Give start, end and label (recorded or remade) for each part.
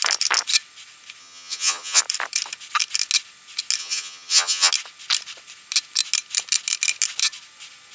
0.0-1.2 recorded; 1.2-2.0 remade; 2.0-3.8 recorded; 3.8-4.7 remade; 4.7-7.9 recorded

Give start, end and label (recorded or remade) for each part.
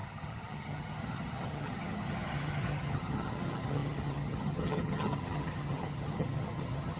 0.0-7.0 remade